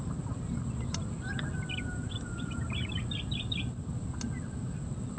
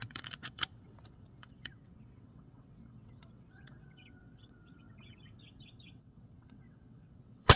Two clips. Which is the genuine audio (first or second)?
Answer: first